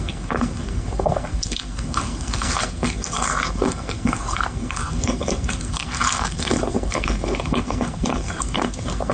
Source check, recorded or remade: remade